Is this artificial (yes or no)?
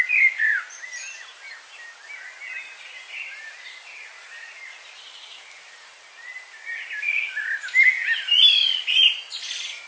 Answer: no